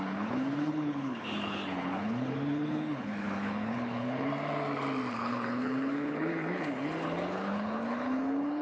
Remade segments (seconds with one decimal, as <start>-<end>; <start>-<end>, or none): 0.0-4.3; 5.1-8.6